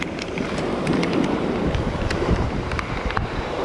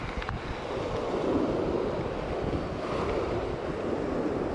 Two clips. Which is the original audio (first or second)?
second